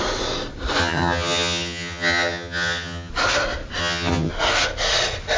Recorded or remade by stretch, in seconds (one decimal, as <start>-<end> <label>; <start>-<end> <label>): 0.0-0.8 recorded; 0.8-3.1 remade; 3.1-3.8 recorded; 3.8-4.3 remade; 4.3-5.4 recorded